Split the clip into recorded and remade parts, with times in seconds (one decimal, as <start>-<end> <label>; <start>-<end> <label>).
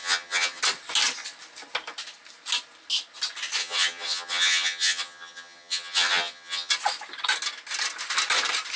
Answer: 0.0-0.6 remade; 0.6-3.6 recorded; 3.6-6.7 remade; 6.7-8.8 recorded